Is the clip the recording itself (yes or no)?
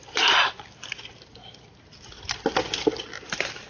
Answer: yes